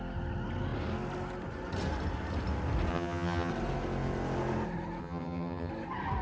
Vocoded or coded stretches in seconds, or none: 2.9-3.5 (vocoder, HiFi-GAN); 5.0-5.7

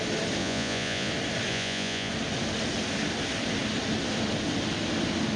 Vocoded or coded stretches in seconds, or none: 0.4-1.1 (vocoder, Vocos); 1.5-2.1

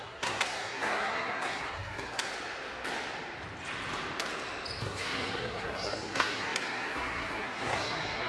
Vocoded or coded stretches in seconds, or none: 0.0-2.3 (codec, SNAC); 4.8-8.3